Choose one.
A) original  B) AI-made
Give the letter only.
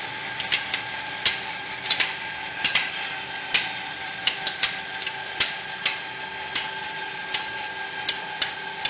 B